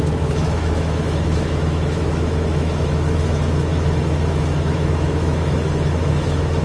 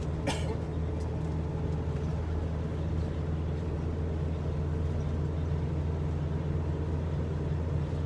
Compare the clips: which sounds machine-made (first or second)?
first